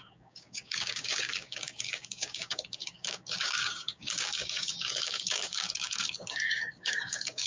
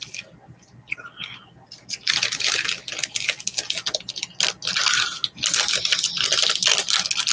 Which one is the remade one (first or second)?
first